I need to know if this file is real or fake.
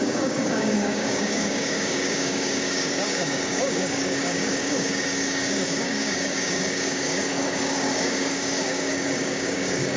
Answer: fake